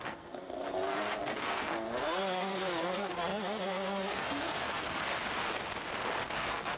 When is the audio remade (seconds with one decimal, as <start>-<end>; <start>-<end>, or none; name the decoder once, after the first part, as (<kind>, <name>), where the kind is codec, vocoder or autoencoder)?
0.0-5.1 (codec, SNAC); 6.3-6.8